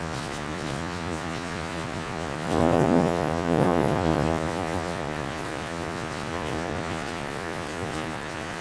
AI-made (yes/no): yes